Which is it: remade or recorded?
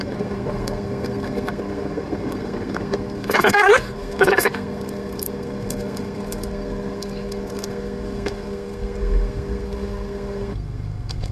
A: remade